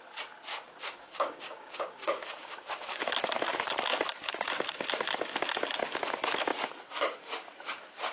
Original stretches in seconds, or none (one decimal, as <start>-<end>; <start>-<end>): 0.0-0.5; 3.1-8.1